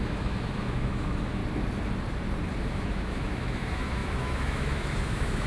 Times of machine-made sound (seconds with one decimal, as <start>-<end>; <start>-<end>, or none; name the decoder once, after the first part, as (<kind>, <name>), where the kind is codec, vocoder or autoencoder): 0.0-1.4 (autoencoder, DAC-VAE); 2.6-5.5